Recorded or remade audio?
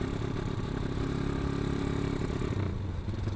recorded